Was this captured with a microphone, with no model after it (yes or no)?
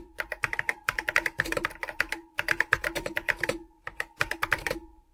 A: no